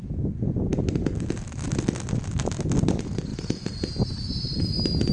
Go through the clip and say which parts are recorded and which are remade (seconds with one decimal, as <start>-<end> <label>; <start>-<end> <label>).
0.0-3.3 recorded; 3.3-3.9 remade; 3.9-5.1 recorded